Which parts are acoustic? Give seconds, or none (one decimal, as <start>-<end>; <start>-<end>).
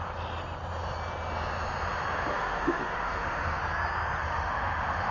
0.0-2.3; 3.6-4.2